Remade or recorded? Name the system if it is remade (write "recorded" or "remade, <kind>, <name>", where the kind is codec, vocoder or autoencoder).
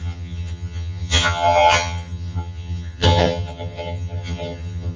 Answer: remade, vocoder, HiFi-GAN